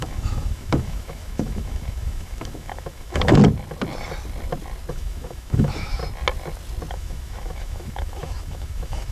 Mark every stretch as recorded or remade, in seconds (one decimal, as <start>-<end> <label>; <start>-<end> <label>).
0.0-3.4 remade; 3.4-4.9 recorded; 4.9-6.0 remade; 6.0-6.9 recorded; 6.9-9.1 remade